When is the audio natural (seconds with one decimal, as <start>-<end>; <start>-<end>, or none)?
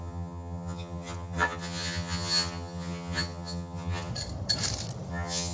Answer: 4.1-5.1